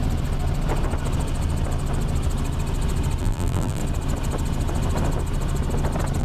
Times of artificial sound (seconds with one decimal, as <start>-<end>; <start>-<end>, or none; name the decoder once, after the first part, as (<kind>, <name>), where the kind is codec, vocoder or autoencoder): 3.2-3.8 (vocoder, BigVGAN v2)